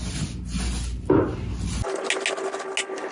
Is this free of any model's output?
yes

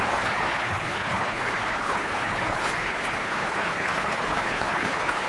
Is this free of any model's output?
no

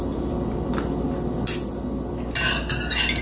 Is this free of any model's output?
yes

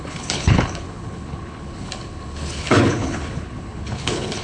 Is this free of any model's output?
no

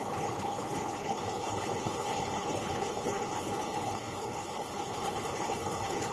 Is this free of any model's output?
no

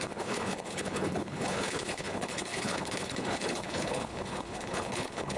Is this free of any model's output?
no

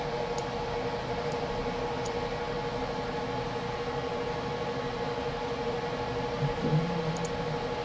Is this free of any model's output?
yes